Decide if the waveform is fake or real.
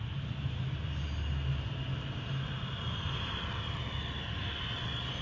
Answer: real